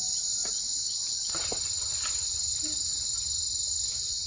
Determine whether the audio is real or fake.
real